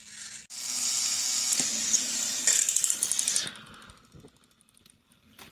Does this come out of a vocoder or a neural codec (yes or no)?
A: no